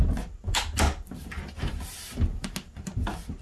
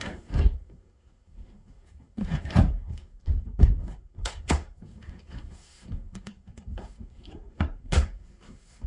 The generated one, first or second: second